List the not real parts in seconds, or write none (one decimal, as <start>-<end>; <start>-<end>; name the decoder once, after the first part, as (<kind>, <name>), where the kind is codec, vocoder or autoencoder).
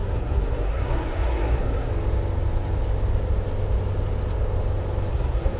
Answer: 0.0-1.9 (codec, SNAC); 5.1-5.6